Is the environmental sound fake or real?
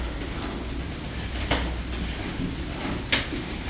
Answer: real